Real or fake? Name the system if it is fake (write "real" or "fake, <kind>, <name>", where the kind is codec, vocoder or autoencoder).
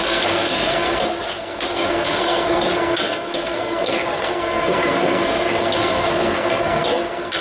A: fake, codec, SNAC